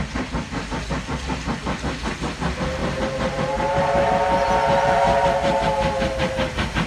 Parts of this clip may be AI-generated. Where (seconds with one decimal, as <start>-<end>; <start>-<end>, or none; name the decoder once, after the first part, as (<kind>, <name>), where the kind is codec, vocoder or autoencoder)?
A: none